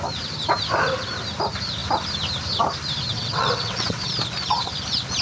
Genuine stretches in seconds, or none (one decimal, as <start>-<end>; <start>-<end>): 0.0-3.1; 4.1-5.2